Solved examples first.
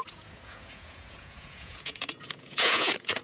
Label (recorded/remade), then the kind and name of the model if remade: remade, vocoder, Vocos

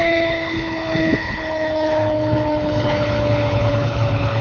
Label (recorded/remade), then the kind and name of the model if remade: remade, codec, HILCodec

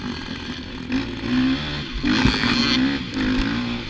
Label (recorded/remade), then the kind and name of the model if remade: recorded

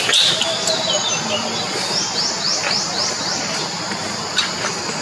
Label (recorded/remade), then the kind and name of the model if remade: recorded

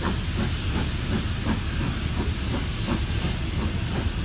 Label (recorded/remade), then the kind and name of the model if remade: recorded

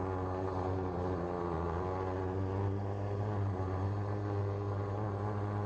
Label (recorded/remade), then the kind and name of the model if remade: recorded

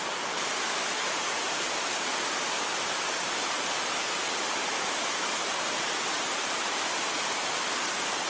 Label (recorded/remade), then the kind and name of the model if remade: remade, vocoder, BigVGAN v2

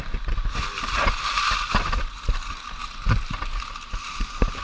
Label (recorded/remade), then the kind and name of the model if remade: remade, vocoder, BigVGAN v2